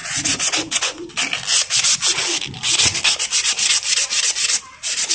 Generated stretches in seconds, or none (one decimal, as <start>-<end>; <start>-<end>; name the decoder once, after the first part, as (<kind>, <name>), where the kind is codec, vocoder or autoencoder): 0.0-1.1 (vocoder, Vocos)